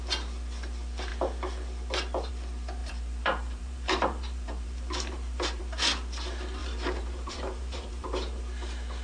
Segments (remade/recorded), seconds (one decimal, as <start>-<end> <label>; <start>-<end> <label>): 0.0-2.8 recorded; 2.8-5.6 remade; 5.6-6.6 recorded; 6.6-8.4 remade; 8.4-9.0 recorded